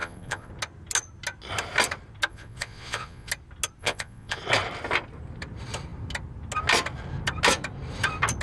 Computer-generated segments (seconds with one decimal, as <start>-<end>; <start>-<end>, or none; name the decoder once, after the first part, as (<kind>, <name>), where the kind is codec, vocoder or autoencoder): 0.0-0.5 (vocoder, Vocos); 2.3-3.3; 3.8-4.4